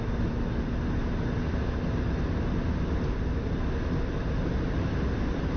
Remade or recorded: recorded